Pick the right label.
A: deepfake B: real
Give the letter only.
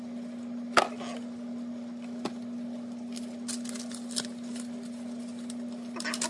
B